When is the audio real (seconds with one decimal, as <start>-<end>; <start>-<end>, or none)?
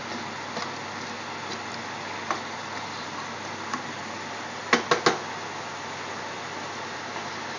0.0-7.6